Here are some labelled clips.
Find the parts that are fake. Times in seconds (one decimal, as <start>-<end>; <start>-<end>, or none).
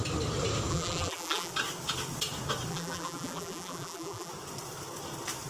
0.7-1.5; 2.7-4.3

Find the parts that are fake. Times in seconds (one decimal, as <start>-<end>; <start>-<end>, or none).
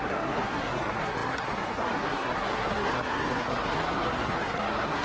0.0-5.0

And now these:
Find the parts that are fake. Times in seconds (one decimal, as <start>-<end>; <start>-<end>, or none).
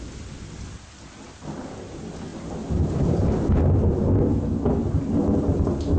none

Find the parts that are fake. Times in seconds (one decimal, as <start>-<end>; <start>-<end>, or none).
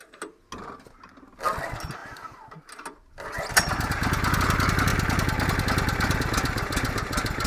none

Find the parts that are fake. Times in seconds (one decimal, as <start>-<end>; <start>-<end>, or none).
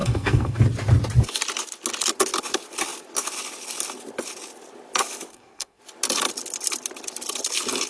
0.0-0.6; 5.3-5.8